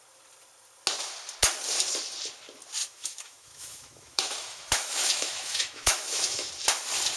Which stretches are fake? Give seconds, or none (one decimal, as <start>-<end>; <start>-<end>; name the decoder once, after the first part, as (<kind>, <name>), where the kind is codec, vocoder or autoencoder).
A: 2.8-6.5 (autoencoder, DAC-VAE)